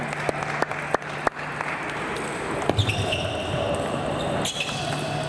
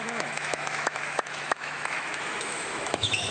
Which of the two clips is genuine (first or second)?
first